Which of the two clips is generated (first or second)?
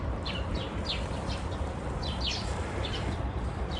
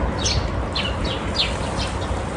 first